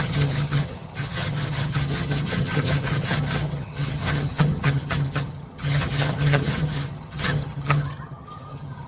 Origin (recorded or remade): remade